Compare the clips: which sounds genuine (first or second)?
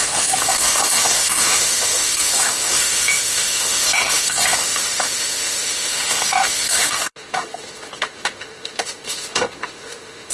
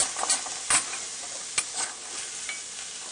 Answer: second